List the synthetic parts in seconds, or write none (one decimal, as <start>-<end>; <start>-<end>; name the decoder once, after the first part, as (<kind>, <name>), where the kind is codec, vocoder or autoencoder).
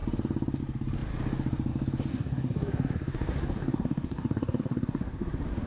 2.1-5.7 (codec, SNAC)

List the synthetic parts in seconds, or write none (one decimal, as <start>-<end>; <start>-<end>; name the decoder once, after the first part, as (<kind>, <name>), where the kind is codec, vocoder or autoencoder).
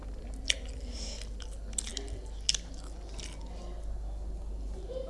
none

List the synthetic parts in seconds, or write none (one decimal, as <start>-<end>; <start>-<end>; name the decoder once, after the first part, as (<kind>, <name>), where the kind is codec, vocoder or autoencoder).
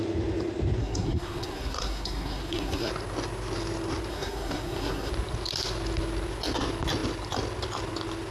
0.8-2.9 (codec, SNAC); 4.1-5.1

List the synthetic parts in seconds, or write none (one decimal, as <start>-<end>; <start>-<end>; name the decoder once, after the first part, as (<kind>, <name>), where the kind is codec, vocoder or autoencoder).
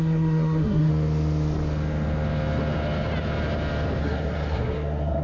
0.0-0.9 (codec, SNAC); 4.0-5.2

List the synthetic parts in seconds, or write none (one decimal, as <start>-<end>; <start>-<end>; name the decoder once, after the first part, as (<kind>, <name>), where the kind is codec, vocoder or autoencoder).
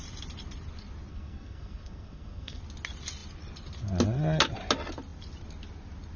1.1-2.6 (codec, SNAC)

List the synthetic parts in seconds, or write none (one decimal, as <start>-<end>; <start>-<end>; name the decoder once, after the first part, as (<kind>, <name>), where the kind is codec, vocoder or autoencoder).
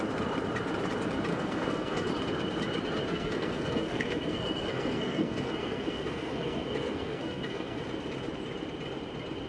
1.3-2.1 (codec, SNAC); 3.1-7.8